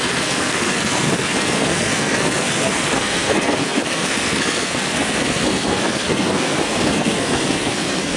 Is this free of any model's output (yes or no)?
no